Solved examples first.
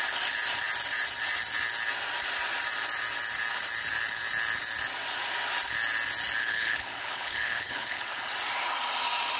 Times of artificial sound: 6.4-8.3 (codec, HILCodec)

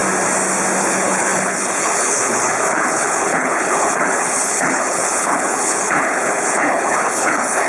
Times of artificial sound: 0.8-7.7 (codec, HILCodec)